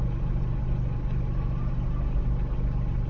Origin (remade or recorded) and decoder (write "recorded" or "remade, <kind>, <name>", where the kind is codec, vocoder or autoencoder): recorded